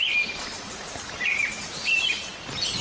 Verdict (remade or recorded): recorded